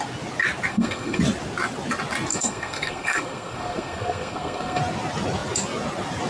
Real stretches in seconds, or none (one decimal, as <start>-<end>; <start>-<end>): 0.0-0.7; 1.2-2.3; 4.8-6.3